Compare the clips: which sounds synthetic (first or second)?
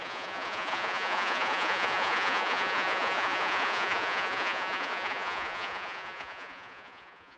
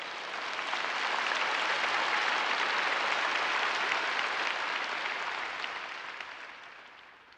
first